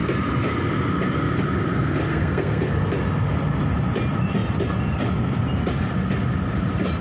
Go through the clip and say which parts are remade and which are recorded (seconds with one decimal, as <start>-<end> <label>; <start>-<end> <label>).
0.0-2.1 recorded; 2.1-2.7 remade; 2.7-7.0 recorded